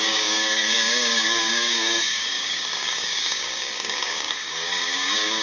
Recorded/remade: remade